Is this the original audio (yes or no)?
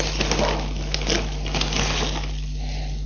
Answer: yes